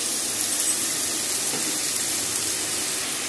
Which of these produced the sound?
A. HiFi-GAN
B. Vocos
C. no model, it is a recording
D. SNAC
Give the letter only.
C